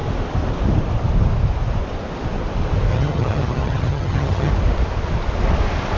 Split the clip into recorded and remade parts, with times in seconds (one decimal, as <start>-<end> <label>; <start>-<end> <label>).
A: 0.0-2.9 recorded; 2.9-4.5 remade; 4.5-6.0 recorded